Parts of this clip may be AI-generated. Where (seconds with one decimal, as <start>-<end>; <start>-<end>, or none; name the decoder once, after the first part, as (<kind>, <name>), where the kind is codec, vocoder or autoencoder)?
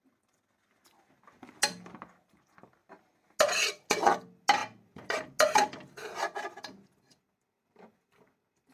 none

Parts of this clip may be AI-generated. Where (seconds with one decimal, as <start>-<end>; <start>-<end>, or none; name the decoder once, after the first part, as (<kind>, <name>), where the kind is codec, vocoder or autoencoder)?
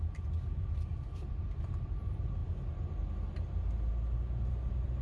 0.9-1.9 (vocoder, BigVGAN v2)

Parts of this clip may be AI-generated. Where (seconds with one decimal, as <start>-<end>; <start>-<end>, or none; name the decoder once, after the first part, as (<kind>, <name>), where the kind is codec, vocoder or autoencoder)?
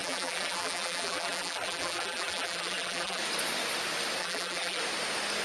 0.0-3.2 (vocoder, BigVGAN v2); 4.2-4.8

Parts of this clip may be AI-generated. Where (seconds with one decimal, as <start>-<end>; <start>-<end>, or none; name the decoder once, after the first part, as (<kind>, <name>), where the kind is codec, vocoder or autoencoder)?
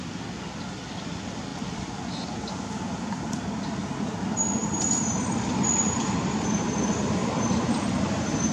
4.6-8.5 (vocoder, BigVGAN v2)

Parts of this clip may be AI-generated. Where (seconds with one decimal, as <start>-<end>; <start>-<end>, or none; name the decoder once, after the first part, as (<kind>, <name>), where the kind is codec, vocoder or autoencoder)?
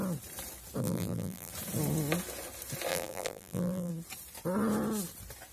0.8-1.5 (vocoder, BigVGAN v2); 2.9-3.9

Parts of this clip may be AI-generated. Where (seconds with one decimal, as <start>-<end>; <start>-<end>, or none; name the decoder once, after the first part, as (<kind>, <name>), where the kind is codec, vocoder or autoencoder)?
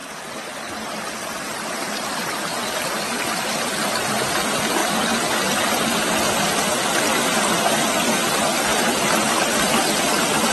1.0-4.8 (vocoder, BigVGAN v2); 6.4-8.5; 9.2-10.5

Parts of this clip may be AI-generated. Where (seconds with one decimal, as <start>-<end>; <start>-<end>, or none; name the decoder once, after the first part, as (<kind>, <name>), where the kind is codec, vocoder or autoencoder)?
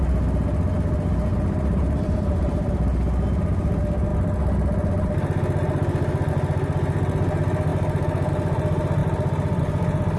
1.3-2.7 (vocoder, BigVGAN v2)